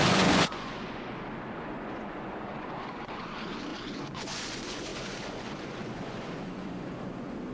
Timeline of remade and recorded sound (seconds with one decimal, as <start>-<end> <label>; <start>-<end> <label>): 0.0-1.1 remade; 1.1-1.7 recorded; 1.7-7.5 remade